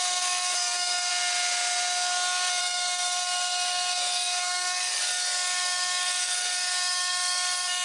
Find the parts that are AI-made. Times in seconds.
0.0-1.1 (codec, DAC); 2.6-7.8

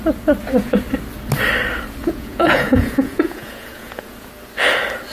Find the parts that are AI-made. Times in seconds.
2.0-4.3 (vocoder, Vocos)